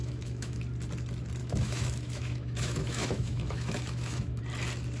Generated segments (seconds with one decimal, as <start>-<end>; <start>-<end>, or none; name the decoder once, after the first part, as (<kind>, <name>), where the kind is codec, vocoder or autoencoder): 0.0-0.6 (autoencoder, DAC-VAE); 1.4-4.4